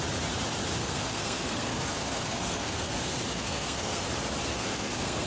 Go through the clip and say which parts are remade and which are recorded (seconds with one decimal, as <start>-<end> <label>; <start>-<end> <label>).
0.0-0.8 recorded; 0.8-4.0 remade; 4.0-4.5 recorded; 4.5-5.3 remade